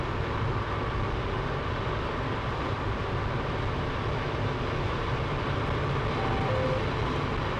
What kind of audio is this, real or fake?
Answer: real